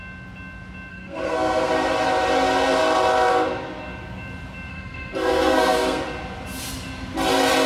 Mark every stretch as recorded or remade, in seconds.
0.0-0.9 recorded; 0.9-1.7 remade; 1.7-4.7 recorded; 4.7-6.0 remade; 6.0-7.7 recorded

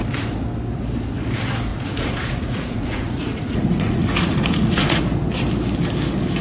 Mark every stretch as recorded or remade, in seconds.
0.0-1.7 recorded; 1.7-5.0 remade; 5.0-6.4 recorded